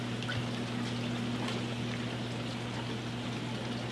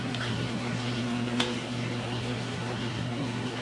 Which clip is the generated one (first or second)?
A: second